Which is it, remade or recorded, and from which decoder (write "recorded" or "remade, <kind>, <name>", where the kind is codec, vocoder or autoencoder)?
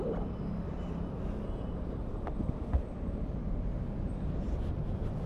remade, vocoder, BigVGAN v2